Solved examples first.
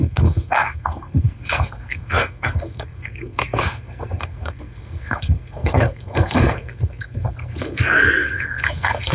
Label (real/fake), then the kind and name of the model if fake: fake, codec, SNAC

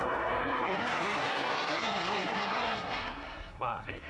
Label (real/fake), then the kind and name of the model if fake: fake, codec, SNAC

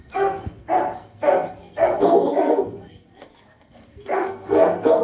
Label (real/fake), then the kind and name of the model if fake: fake, codec, SNAC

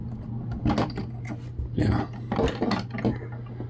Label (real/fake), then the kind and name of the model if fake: real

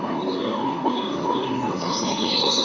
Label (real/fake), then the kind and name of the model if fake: fake, codec, SNAC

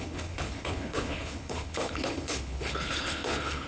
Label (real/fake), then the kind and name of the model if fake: fake, codec, HILCodec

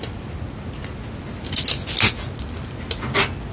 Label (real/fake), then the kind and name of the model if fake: real